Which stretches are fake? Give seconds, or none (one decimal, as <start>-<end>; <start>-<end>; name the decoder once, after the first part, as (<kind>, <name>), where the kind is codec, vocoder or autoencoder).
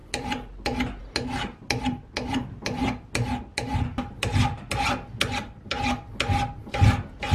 none